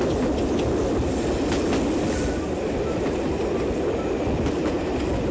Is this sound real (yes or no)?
yes